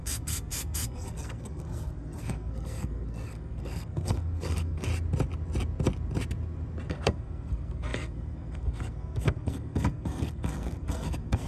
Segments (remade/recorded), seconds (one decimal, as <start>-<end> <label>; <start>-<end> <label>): 0.0-4.9 remade; 4.9-6.9 recorded; 6.9-11.5 remade